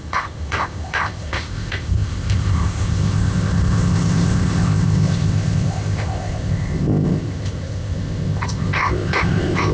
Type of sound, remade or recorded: remade